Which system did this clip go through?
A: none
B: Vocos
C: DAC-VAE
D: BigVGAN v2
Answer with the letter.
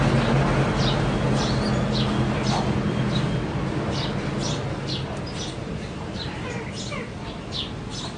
A